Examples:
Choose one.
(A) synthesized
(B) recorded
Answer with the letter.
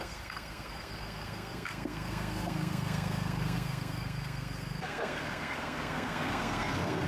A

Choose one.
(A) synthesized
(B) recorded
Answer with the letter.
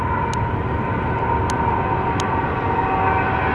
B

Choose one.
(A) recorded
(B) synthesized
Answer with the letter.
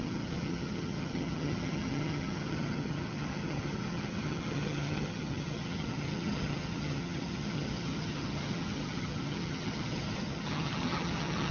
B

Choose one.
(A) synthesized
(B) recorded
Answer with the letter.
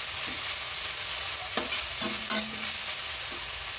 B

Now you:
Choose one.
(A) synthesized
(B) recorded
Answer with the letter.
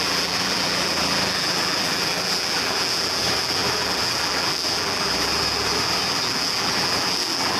A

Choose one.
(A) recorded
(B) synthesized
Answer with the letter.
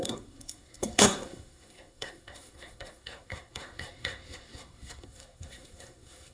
B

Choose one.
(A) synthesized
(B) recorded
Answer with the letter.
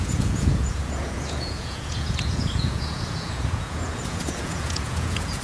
A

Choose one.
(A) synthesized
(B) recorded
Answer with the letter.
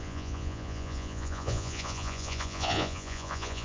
A